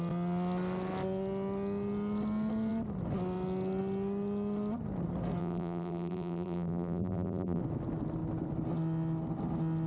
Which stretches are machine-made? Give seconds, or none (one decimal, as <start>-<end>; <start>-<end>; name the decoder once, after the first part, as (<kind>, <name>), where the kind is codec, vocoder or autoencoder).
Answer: 5.4-7.6 (vocoder, BigVGAN v2)